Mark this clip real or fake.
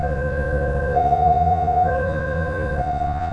fake